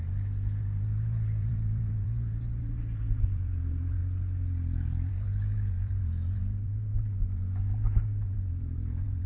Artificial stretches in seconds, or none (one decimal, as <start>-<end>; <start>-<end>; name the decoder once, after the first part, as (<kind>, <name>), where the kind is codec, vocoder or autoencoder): 0.0-4.0 (vocoder, Vocos); 5.1-9.3